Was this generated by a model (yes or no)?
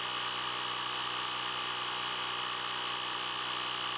no